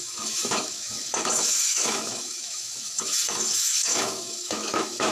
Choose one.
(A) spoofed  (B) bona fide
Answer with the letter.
A